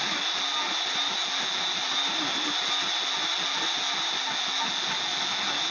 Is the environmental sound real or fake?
real